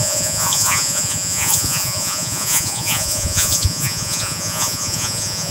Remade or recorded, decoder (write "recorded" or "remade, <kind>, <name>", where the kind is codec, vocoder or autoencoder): remade, vocoder, Vocos